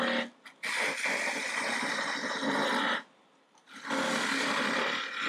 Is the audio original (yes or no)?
yes